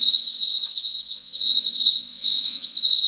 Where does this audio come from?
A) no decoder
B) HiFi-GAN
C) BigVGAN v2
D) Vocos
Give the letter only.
D